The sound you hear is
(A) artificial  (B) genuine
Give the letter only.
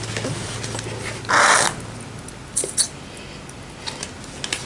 B